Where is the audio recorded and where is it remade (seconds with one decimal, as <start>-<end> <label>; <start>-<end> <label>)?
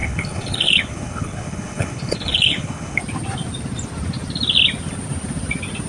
0.0-3.0 remade; 3.0-5.9 recorded